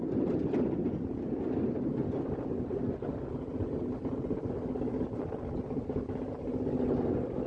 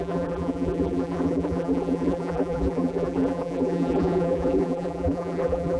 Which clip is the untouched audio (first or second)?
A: first